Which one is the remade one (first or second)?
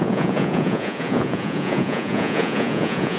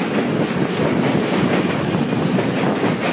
first